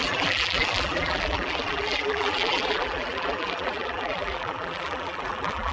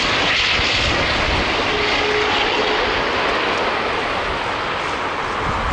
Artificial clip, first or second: first